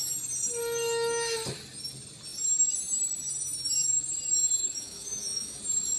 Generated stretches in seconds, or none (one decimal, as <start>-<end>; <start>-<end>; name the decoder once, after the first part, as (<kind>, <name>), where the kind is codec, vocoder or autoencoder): 4.6-5.6 (autoencoder, DAC-VAE)